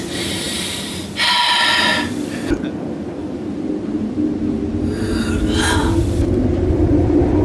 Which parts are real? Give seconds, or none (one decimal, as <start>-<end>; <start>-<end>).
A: 0.0-3.2; 3.7-5.8